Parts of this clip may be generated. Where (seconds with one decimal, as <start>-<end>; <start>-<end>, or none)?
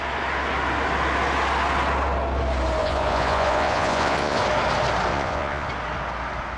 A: 2.8-4.4; 5.1-5.7